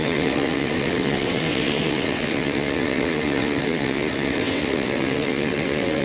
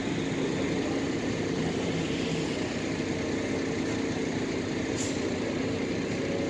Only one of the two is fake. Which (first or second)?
first